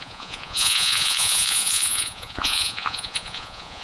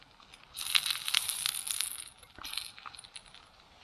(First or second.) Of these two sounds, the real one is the second